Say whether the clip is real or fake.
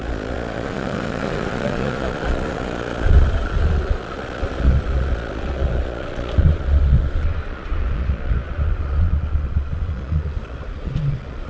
fake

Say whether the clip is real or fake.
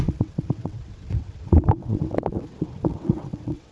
fake